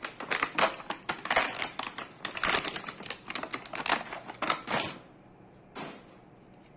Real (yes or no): yes